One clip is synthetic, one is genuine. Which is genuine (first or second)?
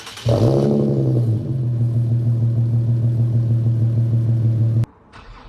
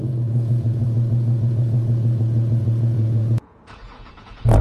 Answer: first